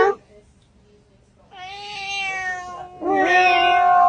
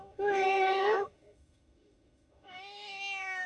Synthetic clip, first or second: second